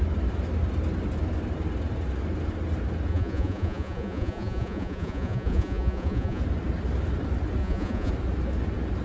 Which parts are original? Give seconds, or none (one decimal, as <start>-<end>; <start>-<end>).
0.0-3.1; 6.4-7.6; 8.1-9.0

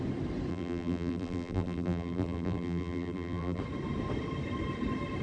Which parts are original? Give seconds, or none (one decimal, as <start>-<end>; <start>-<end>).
0.0-0.5; 3.6-5.2

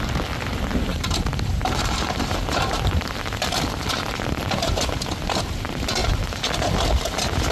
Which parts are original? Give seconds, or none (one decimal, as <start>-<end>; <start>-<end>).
0.0-0.9; 3.4-7.5

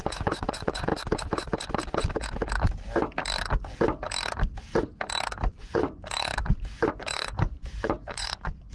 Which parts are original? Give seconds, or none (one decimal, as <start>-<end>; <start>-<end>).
0.9-5.6; 6.3-6.9